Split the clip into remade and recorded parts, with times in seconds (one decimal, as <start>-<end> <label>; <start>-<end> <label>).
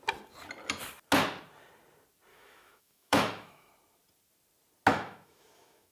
0.0-2.3 recorded; 2.3-3.7 remade; 3.7-4.9 recorded; 4.9-5.9 remade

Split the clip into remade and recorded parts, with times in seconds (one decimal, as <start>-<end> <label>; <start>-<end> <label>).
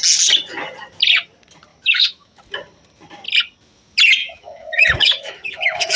0.0-1.7 recorded; 1.7-2.4 remade; 2.4-4.2 recorded; 4.2-6.0 remade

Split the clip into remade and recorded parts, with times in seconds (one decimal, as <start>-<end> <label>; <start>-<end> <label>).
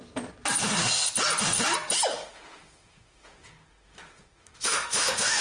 0.0-2.1 recorded; 2.1-5.4 remade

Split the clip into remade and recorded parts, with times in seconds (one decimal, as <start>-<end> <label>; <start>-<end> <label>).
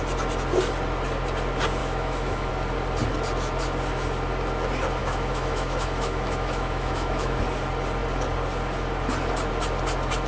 0.0-1.8 recorded; 1.8-2.5 remade; 2.5-5.0 recorded; 5.0-7.4 remade; 7.4-10.3 recorded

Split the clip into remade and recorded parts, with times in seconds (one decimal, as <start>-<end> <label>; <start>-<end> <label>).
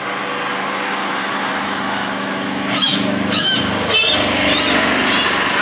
0.0-0.5 recorded; 0.5-3.6 remade; 3.6-5.6 recorded